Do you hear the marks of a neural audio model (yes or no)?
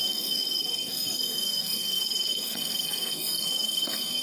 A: yes